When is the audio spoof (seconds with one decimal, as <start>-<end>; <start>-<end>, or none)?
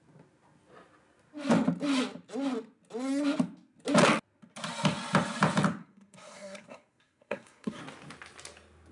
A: 5.8-7.8